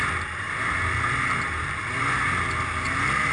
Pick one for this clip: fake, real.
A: real